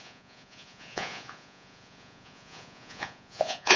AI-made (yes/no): yes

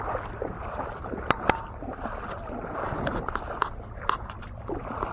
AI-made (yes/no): yes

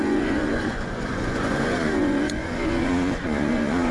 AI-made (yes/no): yes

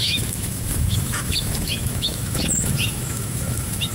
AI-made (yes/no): yes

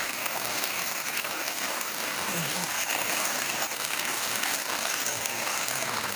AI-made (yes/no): yes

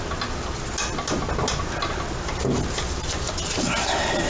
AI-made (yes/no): no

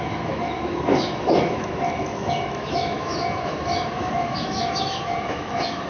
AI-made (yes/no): yes